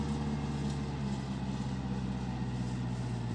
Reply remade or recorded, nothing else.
recorded